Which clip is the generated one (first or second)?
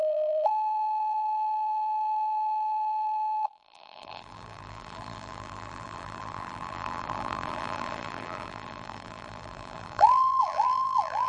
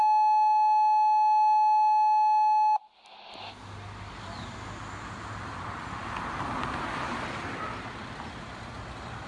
first